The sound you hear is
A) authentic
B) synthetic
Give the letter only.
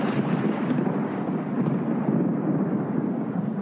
A